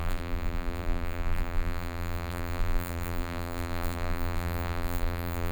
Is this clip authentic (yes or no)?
no